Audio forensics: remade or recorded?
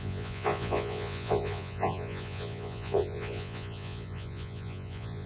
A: remade